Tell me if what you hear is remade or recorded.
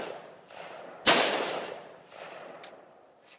recorded